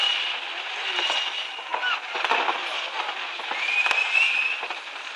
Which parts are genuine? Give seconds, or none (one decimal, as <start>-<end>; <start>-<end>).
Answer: 0.0-5.2